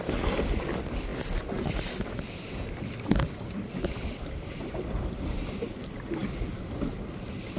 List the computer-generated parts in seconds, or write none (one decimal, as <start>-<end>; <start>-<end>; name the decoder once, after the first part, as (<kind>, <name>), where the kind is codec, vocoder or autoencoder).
none